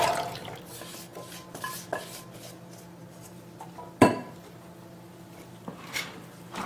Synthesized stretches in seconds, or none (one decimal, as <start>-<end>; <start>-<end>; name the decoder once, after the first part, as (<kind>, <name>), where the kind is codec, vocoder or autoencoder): 3.0-6.7 (vocoder, BigVGAN v2)